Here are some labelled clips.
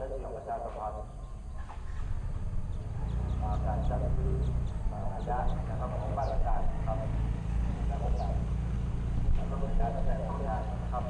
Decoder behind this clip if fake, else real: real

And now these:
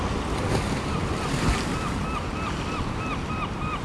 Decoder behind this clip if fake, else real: real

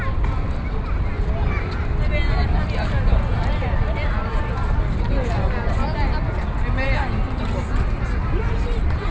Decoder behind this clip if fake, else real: real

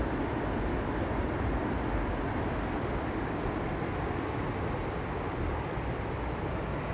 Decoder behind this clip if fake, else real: real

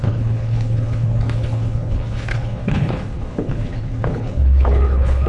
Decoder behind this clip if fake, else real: fake, codec, HILCodec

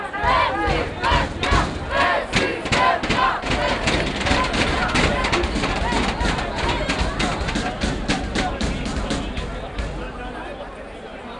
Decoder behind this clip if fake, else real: real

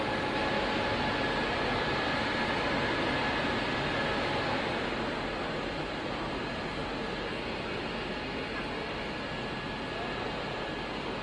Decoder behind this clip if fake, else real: real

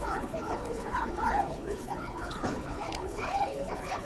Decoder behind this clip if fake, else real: fake, codec, HILCodec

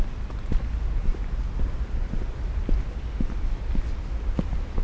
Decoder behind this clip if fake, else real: real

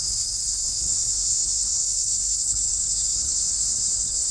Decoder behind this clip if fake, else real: fake, codec, HILCodec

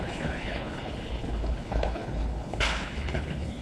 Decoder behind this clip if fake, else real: fake, codec, HILCodec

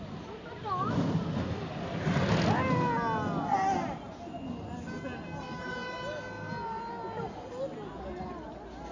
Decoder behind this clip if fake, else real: real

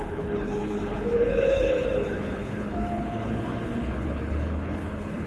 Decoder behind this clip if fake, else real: fake, codec, HILCodec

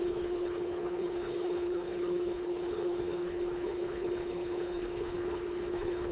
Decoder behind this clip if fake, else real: fake, codec, HILCodec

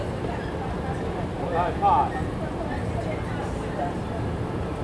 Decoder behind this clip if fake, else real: real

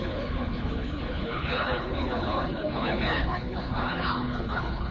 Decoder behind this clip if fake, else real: fake, codec, HILCodec